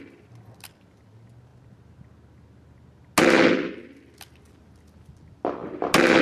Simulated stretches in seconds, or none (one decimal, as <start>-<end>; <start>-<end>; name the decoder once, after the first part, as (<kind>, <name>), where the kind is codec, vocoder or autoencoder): none